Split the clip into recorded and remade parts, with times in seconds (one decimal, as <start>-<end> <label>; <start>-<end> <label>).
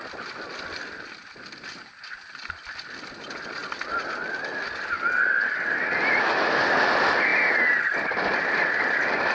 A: 0.0-9.3 recorded